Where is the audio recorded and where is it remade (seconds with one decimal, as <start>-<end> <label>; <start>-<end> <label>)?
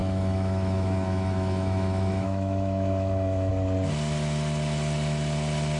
0.0-3.5 remade; 3.5-5.8 recorded